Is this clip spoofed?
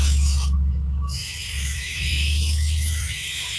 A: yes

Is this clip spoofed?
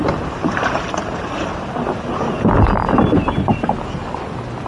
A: no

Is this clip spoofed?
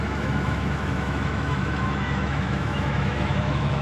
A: yes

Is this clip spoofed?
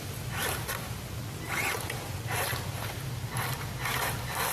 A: no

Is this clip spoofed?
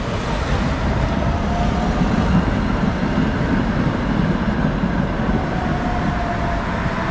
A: no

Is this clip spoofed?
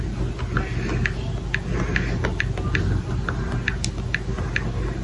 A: no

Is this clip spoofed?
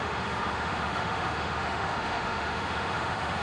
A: yes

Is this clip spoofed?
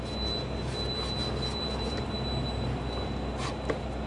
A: no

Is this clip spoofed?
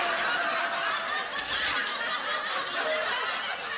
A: no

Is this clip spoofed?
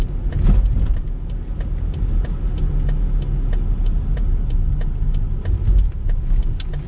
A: no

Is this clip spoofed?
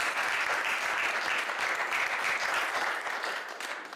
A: no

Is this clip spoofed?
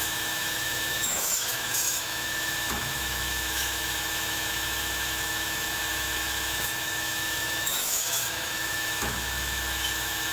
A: yes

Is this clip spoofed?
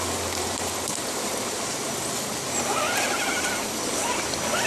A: no